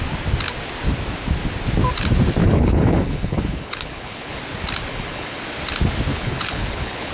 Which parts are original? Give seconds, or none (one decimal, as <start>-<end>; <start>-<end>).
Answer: 0.0-2.4; 4.4-4.9; 5.4-6.1